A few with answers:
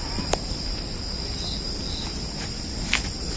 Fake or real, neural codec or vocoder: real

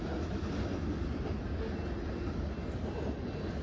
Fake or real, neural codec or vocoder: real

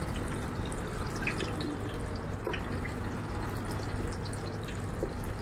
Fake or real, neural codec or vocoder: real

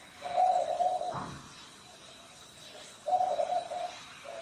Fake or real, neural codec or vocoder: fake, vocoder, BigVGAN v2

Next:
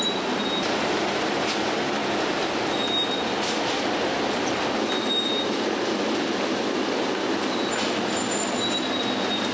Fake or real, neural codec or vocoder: real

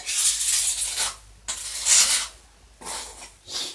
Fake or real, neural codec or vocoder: real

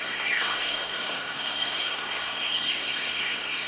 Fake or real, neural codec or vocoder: fake, codec, SNAC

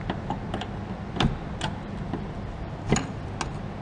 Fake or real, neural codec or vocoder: real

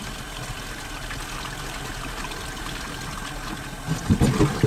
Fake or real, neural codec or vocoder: real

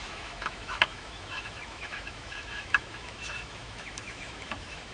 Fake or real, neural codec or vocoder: fake, autoencoder, DAC-VAE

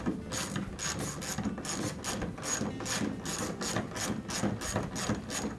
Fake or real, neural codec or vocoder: real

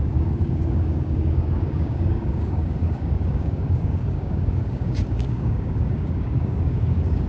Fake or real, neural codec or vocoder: fake, codec, DAC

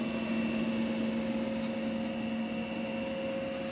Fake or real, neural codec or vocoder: real